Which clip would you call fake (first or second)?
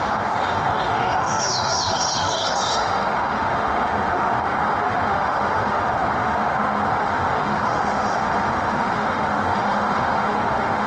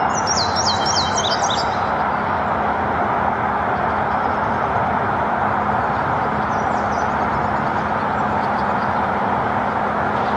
first